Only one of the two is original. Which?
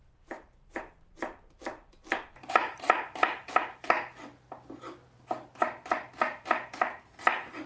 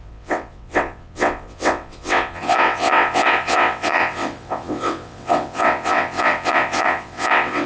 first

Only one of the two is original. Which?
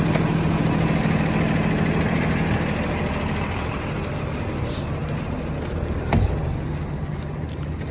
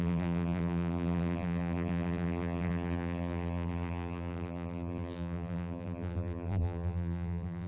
first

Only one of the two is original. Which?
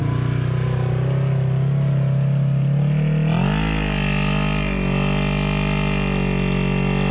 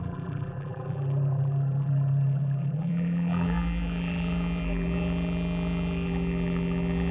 first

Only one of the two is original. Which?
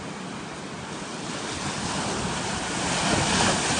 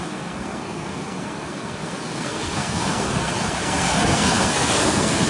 first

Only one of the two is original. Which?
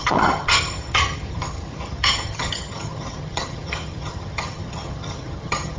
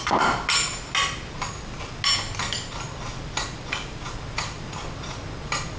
second